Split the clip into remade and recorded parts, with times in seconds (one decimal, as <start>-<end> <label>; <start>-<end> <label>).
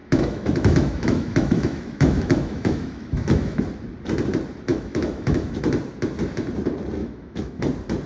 0.0-3.6 remade; 3.6-4.7 recorded; 4.7-5.6 remade; 5.6-7.0 recorded; 7.0-7.6 remade; 7.6-8.1 recorded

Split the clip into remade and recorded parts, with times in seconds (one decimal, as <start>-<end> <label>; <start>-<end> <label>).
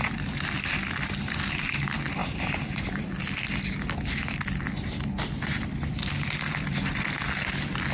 0.0-2.2 recorded; 2.2-3.0 remade; 3.0-7.9 recorded